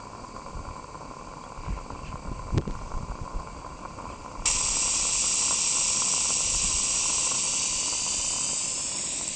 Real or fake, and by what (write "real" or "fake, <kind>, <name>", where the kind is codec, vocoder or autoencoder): real